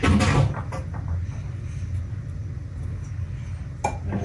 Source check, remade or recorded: recorded